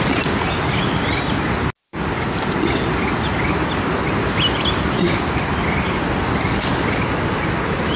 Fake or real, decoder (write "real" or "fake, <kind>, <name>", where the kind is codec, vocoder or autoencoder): real